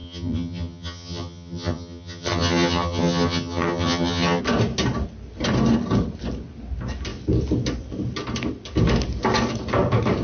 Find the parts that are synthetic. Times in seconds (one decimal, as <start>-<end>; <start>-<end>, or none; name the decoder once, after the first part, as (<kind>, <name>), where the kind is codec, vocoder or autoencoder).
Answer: 0.0-4.4 (vocoder, HiFi-GAN)